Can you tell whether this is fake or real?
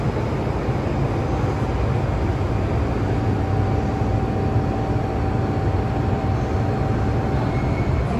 real